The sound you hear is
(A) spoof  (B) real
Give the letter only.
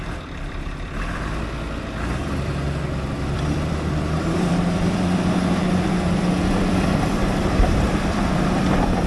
A